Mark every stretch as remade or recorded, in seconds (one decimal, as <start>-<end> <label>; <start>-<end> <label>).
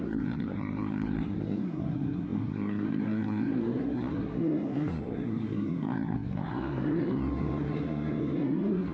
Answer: 0.0-8.9 remade